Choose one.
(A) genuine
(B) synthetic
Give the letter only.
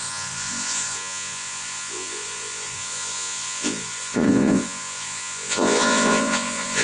B